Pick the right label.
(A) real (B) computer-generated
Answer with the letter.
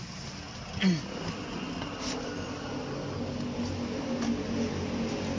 A